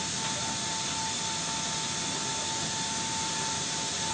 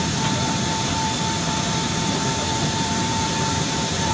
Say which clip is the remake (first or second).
second